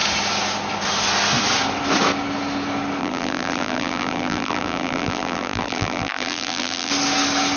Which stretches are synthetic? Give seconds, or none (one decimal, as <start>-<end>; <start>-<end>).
3.0-6.9

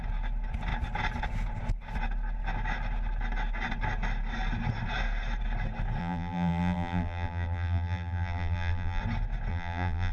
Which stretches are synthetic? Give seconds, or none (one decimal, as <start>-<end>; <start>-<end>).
6.0-9.0; 9.5-10.1

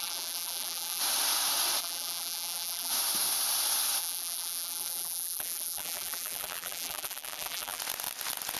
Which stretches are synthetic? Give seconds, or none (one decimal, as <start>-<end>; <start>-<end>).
0.0-1.0; 1.8-2.9; 4.0-7.8

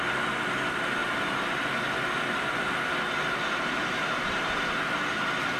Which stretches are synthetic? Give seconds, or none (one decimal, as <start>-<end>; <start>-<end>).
1.0-1.5; 3.2-4.6